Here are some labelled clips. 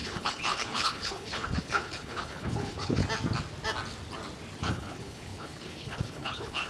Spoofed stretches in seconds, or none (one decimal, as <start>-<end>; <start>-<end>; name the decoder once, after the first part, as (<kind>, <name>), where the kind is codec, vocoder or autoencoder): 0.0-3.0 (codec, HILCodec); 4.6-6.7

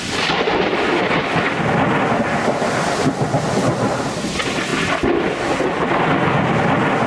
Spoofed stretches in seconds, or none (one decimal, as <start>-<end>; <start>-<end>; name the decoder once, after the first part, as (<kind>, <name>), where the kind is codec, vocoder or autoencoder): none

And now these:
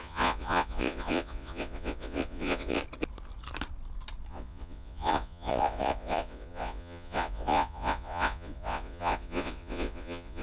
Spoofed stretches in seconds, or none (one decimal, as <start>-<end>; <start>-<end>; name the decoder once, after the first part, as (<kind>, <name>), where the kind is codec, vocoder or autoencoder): 0.0-2.8 (vocoder, Vocos); 4.3-10.4